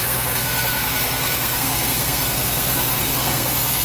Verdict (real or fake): fake